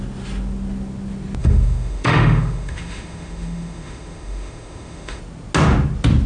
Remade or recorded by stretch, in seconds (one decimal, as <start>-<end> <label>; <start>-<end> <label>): 0.0-1.4 recorded; 1.4-5.2 remade; 5.2-6.3 recorded

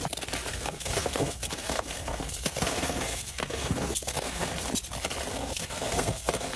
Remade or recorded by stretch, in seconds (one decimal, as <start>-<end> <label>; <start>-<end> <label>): 0.0-0.5 recorded; 0.5-4.5 remade; 4.5-5.3 recorded; 5.3-6.6 remade

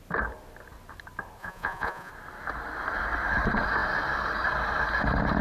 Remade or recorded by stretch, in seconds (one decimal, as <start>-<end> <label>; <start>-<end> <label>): 0.0-1.4 recorded; 1.4-2.1 remade; 2.1-5.4 recorded

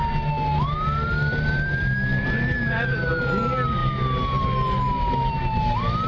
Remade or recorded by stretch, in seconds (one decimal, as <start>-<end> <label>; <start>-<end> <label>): 0.0-6.1 recorded

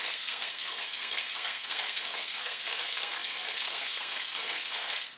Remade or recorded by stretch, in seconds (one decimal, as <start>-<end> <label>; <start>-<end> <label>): 0.0-5.2 remade

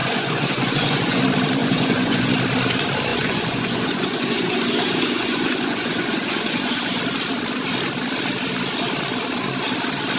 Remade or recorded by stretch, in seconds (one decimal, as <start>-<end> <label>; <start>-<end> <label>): 0.0-1.2 remade; 1.2-1.6 recorded; 1.6-2.3 remade; 2.3-3.1 recorded; 3.1-7.0 remade; 7.0-10.2 recorded

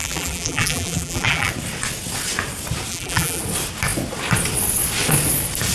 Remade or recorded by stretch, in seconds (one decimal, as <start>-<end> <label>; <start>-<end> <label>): 0.0-1.5 remade; 1.5-2.9 recorded; 2.9-3.4 remade; 3.4-5.7 recorded

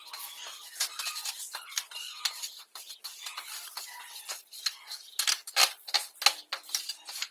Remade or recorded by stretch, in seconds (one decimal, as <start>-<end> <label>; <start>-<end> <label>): 0.0-2.0 recorded; 2.0-3.8 remade; 3.8-7.3 recorded